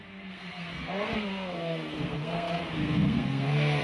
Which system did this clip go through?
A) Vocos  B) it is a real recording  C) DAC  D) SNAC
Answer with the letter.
D